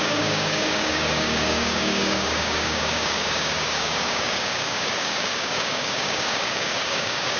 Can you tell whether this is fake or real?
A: fake